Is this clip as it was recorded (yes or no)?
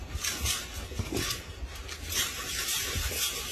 yes